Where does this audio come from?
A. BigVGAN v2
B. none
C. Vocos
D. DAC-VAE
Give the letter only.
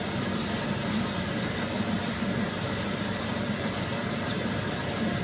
A